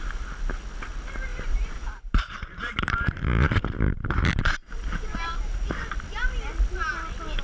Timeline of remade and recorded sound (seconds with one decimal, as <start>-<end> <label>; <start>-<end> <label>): 0.0-1.3 recorded; 1.3-5.7 remade; 5.7-7.4 recorded

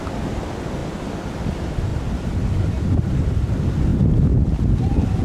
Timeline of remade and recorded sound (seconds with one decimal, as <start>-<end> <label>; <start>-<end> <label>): 0.0-5.2 recorded

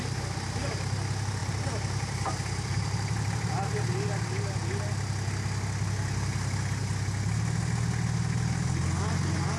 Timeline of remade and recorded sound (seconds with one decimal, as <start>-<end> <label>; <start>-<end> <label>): 0.0-1.4 recorded; 1.4-3.7 remade; 3.7-9.6 recorded